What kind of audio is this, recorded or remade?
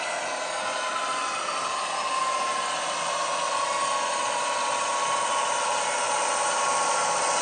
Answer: recorded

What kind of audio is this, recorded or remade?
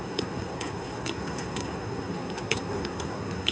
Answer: remade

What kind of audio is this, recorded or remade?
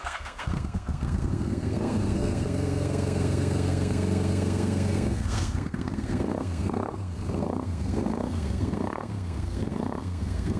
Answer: remade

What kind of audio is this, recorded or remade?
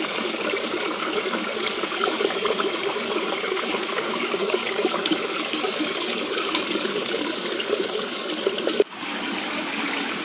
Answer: remade